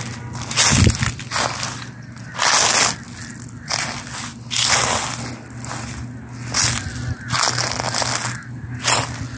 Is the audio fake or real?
real